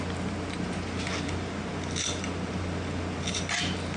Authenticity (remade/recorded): recorded